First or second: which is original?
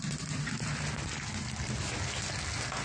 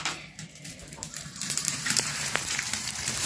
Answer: first